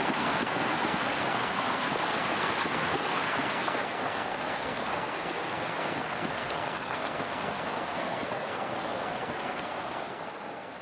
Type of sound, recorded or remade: remade